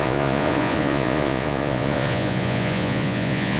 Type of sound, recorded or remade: remade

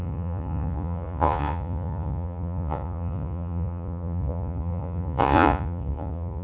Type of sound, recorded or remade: remade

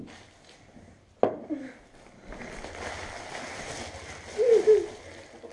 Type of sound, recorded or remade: recorded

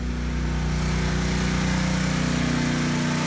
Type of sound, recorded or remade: recorded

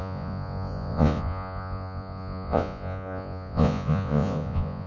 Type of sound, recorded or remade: remade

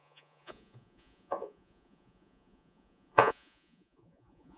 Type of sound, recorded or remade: remade